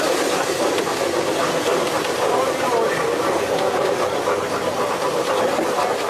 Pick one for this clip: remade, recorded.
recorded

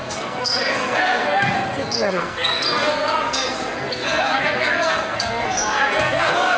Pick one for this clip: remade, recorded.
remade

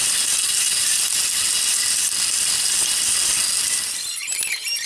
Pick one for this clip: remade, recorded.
recorded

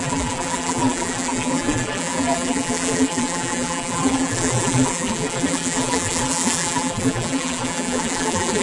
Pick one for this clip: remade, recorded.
remade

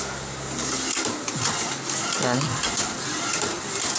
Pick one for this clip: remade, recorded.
recorded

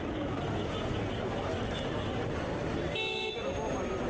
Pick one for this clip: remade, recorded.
recorded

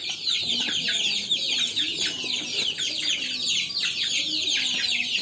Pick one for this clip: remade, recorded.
recorded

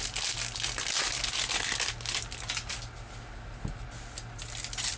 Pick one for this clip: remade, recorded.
recorded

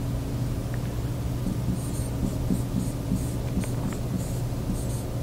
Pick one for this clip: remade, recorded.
recorded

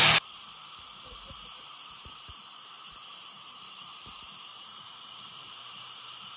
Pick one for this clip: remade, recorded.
remade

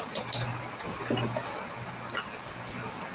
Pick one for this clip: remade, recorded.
recorded